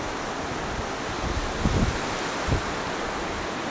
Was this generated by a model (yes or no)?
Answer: no